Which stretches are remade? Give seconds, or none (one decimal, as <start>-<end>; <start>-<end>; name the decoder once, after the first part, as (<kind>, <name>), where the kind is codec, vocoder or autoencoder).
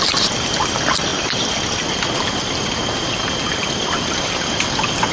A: none